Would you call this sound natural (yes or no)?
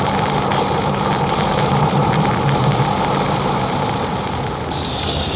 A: yes